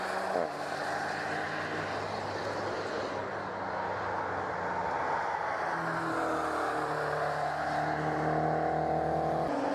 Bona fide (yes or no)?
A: yes